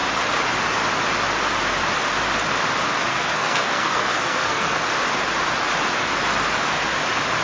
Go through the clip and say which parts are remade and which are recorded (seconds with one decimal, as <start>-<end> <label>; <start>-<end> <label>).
0.0-3.1 recorded; 3.1-4.8 remade; 4.8-7.4 recorded